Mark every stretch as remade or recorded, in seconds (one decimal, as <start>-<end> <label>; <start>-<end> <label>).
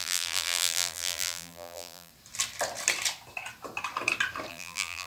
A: 0.0-2.1 remade; 2.1-4.5 recorded; 4.5-5.1 remade